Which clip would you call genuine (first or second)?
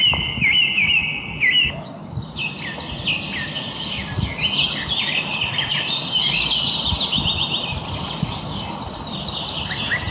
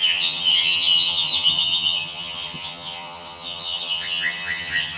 first